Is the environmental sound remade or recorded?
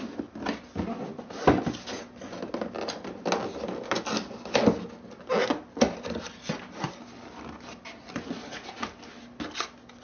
recorded